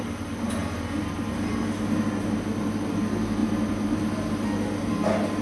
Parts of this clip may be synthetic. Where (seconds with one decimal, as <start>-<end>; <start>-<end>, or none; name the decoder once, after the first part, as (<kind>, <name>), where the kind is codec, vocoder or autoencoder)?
none